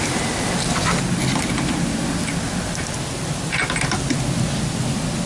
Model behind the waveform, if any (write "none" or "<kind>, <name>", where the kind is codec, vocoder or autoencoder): none